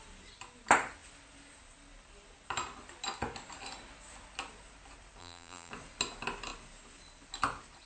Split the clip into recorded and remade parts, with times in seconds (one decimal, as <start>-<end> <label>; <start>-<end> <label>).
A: 0.0-5.2 recorded; 5.2-5.7 remade; 5.7-7.9 recorded